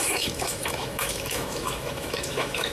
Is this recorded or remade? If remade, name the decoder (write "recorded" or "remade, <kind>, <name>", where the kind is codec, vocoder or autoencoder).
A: remade, autoencoder, DAC-VAE